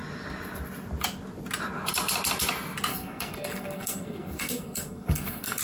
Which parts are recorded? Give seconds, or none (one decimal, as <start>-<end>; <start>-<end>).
0.0-2.9